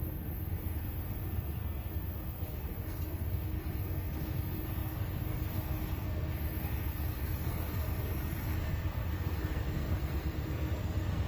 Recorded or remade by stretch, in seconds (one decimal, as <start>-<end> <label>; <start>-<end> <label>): 0.0-11.3 remade